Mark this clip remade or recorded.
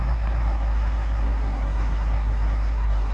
remade